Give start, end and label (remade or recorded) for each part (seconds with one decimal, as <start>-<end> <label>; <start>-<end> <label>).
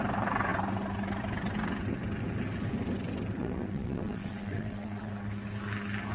0.0-3.4 recorded; 3.4-5.1 remade; 5.1-6.1 recorded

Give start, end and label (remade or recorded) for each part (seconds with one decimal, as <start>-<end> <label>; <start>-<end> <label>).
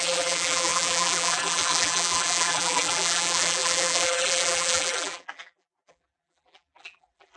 0.0-7.4 remade